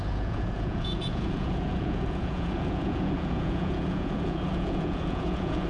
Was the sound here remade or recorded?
remade